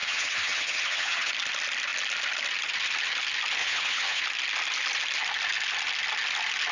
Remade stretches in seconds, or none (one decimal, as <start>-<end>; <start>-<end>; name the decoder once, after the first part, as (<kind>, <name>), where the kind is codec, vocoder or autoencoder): 0.0-1.3 (vocoder, HiFi-GAN); 3.6-4.2